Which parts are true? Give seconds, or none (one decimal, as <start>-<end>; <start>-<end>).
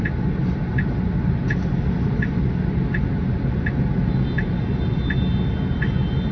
0.0-6.3